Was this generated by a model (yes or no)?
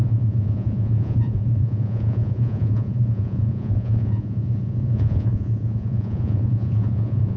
yes